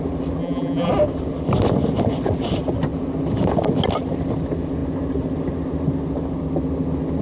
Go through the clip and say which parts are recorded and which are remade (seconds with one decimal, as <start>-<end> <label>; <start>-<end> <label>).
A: 0.0-0.4 recorded; 0.4-0.9 remade; 0.9-7.2 recorded